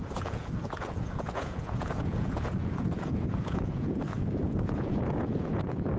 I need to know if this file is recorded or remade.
remade